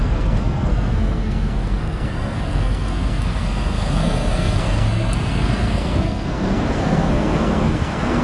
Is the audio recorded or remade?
remade